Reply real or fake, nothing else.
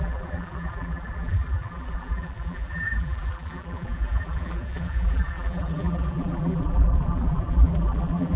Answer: fake